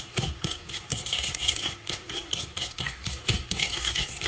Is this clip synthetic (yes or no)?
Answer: yes